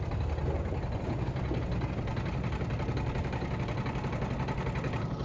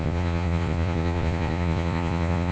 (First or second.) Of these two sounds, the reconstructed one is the second